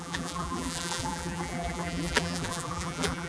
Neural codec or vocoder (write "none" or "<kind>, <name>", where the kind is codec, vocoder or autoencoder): vocoder, BigVGAN v2